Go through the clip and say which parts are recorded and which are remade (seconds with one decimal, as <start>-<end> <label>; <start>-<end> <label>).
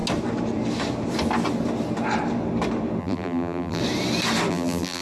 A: 0.0-3.0 recorded; 3.0-3.8 remade; 3.8-4.5 recorded; 4.5-5.0 remade